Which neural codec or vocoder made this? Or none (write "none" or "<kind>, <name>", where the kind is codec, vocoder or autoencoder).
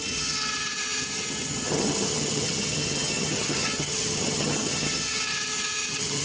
vocoder, HiFi-GAN